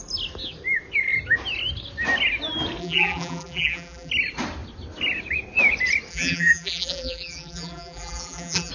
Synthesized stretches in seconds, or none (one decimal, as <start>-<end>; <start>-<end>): 2.8-4.1; 6.1-8.7

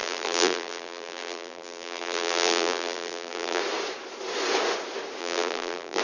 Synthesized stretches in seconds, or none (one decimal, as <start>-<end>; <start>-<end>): 0.0-3.6; 5.2-6.0

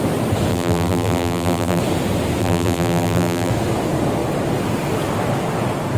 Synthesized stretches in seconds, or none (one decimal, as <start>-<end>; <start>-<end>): 0.5-1.8; 2.4-3.5

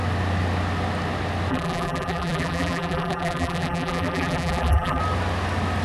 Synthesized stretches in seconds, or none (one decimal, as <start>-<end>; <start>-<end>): 1.5-5.0

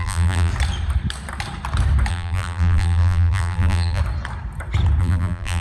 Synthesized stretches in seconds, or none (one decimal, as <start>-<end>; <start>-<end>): 0.0-0.5; 2.1-4.0; 5.0-5.6

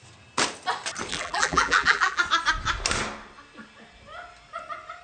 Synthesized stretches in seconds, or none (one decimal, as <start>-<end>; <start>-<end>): 1.1-2.2

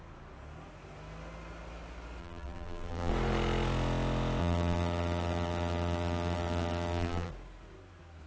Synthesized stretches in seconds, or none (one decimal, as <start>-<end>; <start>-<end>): 2.2-3.1; 4.4-7.3